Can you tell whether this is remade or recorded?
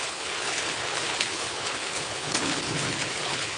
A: remade